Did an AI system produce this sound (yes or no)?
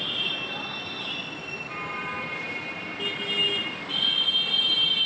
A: no